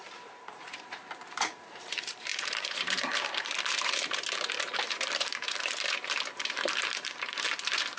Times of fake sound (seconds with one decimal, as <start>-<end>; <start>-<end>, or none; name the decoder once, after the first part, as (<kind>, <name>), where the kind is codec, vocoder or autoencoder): 0.0-8.0 (vocoder, BigVGAN v2)